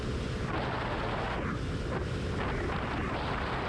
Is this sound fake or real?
real